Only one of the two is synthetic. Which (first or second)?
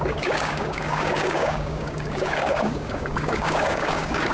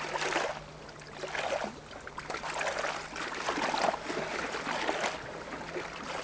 first